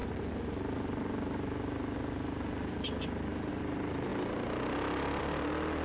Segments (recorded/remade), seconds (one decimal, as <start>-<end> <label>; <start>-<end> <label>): 0.0-5.8 recorded